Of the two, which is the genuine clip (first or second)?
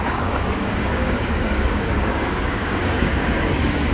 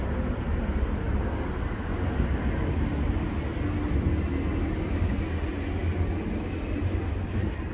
second